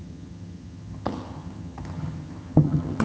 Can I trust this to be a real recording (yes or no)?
no